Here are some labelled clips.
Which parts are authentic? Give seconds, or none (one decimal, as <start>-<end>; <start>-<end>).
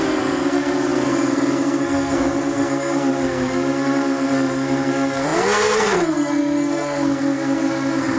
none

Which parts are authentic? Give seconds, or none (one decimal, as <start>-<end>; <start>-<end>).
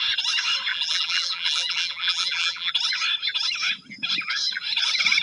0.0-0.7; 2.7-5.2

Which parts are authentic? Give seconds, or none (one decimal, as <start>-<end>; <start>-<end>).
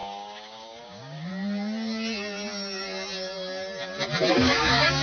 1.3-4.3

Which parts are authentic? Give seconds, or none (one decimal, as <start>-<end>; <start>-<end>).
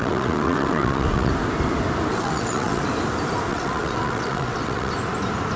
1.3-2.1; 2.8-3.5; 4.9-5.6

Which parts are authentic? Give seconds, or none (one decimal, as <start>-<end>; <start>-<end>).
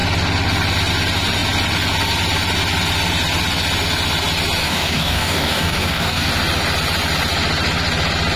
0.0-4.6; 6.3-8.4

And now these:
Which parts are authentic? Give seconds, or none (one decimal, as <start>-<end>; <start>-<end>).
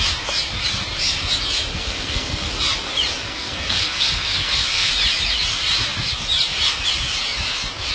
0.0-1.7; 2.5-3.2; 4.9-7.9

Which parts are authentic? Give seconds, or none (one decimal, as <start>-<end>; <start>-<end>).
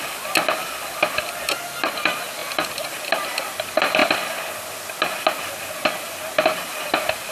0.0-7.3